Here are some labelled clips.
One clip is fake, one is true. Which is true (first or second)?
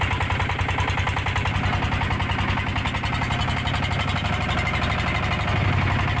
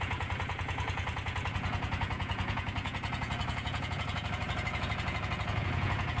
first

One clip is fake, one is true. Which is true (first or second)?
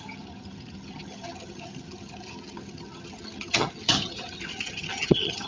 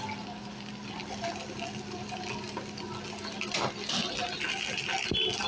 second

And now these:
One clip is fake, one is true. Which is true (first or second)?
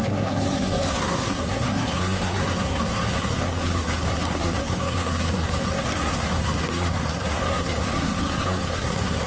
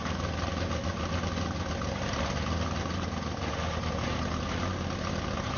second